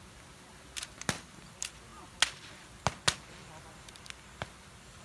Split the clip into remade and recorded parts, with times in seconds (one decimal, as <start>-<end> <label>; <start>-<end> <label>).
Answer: 0.0-5.0 recorded